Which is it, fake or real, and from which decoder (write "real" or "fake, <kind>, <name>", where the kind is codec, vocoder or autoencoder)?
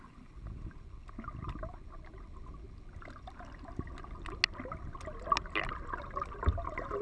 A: real